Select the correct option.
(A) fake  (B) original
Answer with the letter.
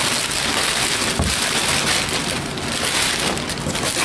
B